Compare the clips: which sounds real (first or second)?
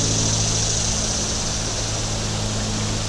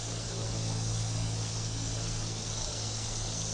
first